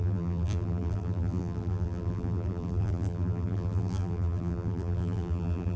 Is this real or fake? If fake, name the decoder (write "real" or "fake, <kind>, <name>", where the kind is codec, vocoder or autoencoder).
fake, vocoder, BigVGAN v2